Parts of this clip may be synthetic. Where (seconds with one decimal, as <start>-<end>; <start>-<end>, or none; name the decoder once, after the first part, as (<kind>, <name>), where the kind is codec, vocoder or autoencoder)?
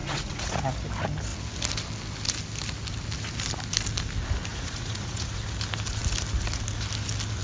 0.0-0.6 (vocoder, Vocos); 4.5-5.4